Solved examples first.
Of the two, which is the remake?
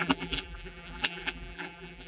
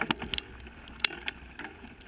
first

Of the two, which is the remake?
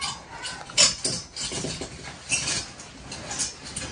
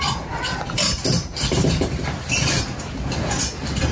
second